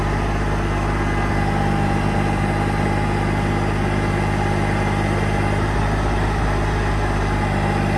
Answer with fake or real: real